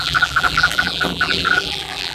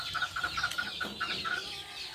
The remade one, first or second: first